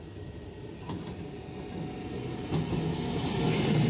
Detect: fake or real real